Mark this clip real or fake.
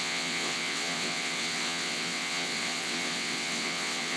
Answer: fake